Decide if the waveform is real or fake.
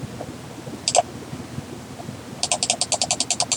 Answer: real